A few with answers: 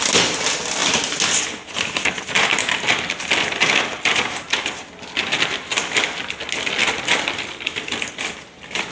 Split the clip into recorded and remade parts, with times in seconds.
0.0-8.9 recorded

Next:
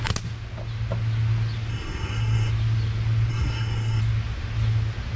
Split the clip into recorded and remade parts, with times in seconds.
0.0-1.7 recorded; 1.7-2.5 remade; 2.5-3.3 recorded; 3.3-4.0 remade; 4.0-5.2 recorded

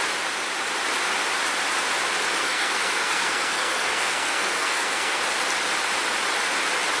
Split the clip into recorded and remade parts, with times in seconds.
0.0-2.4 recorded; 2.4-5.2 remade; 5.2-7.0 recorded

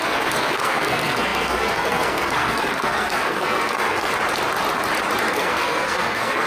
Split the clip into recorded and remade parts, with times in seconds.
0.0-4.1 remade; 4.1-5.2 recorded; 5.2-6.5 remade

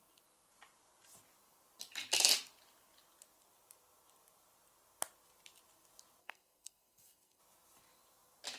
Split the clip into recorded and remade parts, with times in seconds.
0.0-6.2 recorded; 6.2-7.4 remade; 7.4-8.6 recorded

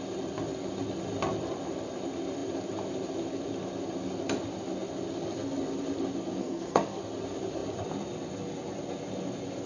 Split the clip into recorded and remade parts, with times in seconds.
0.0-6.4 recorded; 6.4-7.0 remade; 7.0-9.7 recorded

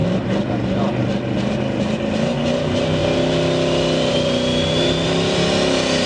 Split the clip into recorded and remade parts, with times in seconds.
0.0-6.1 recorded

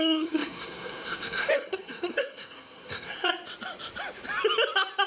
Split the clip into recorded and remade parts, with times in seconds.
0.0-3.3 remade; 3.3-5.1 recorded